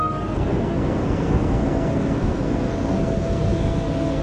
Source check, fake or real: fake